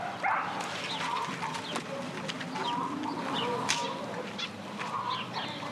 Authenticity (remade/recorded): recorded